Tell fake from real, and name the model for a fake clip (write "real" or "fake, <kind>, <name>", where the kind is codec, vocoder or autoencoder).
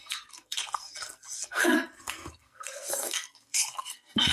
fake, codec, SNAC